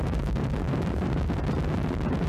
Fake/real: fake